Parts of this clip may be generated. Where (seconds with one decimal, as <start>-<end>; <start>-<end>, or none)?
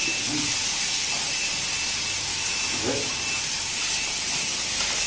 2.3-3.1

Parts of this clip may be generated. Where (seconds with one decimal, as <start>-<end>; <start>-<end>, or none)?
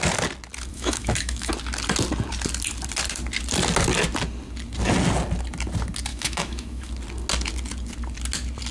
0.7-1.5; 6.1-6.9